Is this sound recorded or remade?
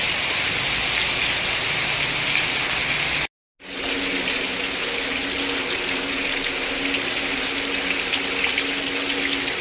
recorded